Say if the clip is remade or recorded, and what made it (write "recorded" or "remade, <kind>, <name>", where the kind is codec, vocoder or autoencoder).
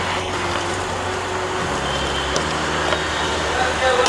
recorded